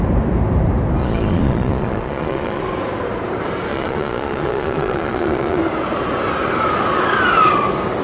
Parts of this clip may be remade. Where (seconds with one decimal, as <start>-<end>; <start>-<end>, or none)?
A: 1.0-2.6; 3.7-5.6